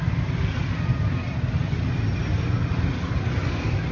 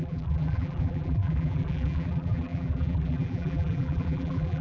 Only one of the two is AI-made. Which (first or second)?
second